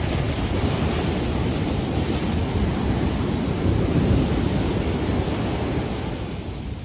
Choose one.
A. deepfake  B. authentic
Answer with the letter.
B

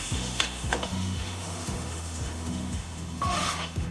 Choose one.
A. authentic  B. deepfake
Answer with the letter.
B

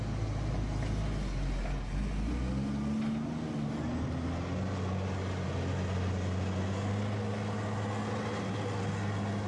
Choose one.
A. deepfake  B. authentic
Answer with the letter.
B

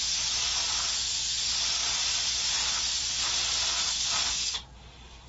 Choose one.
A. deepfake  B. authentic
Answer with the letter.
B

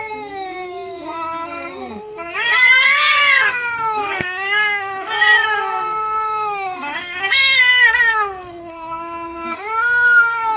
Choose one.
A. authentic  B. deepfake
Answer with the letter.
B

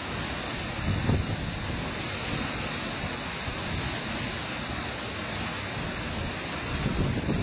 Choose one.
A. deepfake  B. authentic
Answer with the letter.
B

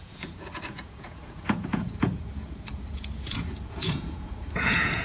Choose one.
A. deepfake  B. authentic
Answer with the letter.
A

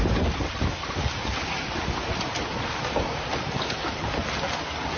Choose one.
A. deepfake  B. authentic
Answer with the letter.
B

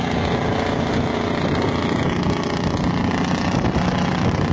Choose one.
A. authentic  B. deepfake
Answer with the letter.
A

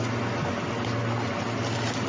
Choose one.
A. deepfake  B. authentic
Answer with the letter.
B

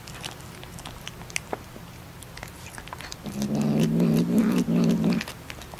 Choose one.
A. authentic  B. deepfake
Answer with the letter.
A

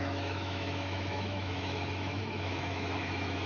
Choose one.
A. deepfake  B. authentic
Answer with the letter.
A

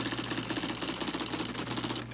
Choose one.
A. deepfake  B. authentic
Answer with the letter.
B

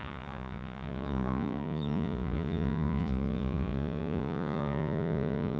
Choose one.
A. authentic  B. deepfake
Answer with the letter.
B